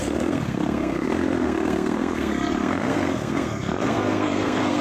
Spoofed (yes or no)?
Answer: yes